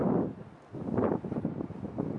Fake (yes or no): no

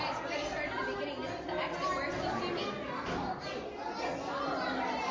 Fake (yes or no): no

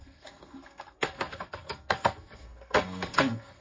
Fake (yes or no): yes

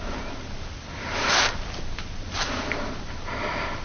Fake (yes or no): no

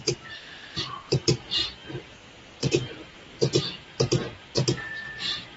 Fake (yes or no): yes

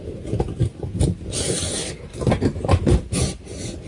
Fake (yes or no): no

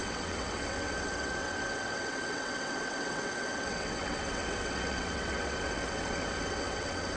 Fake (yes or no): yes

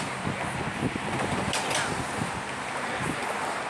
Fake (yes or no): no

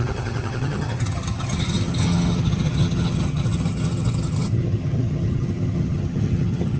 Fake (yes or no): yes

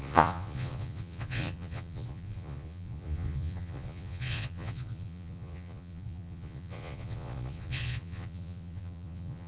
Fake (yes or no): yes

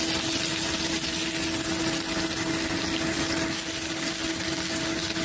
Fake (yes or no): no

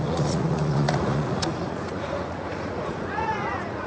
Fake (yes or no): yes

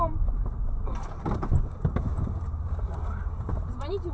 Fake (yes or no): yes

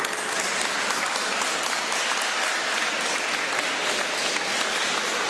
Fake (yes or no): no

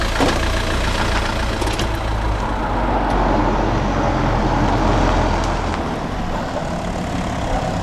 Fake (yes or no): no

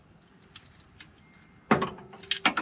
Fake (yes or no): no